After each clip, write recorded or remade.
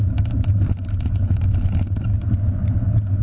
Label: recorded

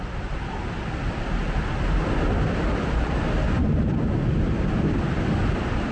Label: remade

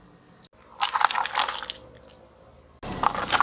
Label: recorded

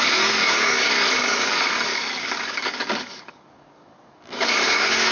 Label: remade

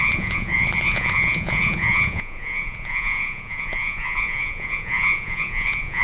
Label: remade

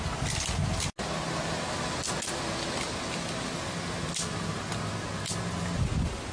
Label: recorded